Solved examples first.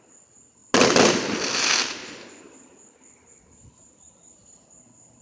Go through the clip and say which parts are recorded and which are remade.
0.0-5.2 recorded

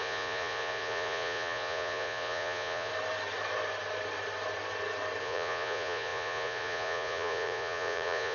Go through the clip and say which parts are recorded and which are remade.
0.0-2.9 remade; 2.9-5.2 recorded; 5.2-8.3 remade

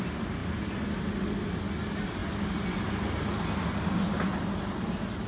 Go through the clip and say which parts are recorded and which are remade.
0.0-5.3 recorded

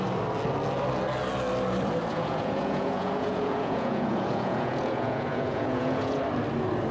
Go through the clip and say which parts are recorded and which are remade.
0.0-2.1 recorded; 2.1-6.2 remade; 6.2-6.9 recorded